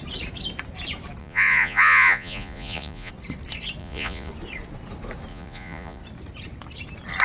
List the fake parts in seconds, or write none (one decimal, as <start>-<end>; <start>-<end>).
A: 1.2-3.1; 3.8-4.3; 5.3-6.0